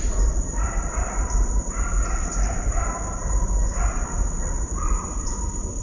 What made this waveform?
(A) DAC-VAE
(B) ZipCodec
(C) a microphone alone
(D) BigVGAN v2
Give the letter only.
D